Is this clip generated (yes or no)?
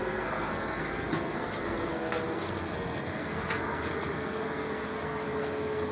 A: yes